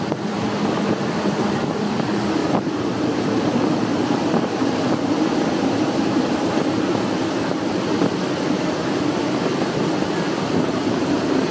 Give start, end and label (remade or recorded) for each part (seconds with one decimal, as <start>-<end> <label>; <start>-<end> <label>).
0.0-2.4 recorded; 2.4-3.5 remade; 3.5-3.9 recorded; 3.9-6.9 remade; 6.9-11.5 recorded